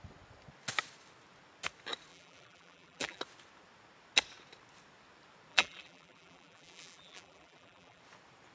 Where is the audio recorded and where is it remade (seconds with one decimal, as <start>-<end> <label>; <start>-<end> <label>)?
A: 0.0-2.1 recorded; 2.1-3.2 remade; 3.2-5.5 recorded; 5.5-8.0 remade; 8.0-8.5 recorded